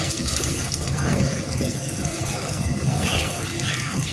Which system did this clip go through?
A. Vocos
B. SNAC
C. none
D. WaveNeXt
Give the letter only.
B